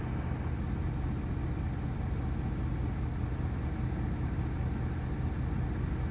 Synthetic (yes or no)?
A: no